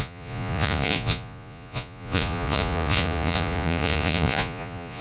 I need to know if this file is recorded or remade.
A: remade